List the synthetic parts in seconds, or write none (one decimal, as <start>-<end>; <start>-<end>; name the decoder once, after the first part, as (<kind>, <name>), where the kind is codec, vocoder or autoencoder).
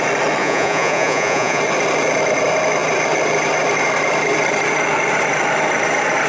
0.4-1.6 (vocoder, Vocos)